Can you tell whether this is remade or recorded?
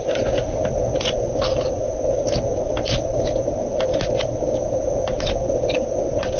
recorded